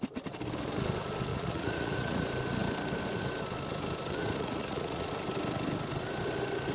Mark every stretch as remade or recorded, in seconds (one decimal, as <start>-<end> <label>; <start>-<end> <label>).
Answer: 0.0-1.3 recorded; 1.3-2.2 remade; 2.2-4.2 recorded; 4.2-5.1 remade; 5.1-6.7 recorded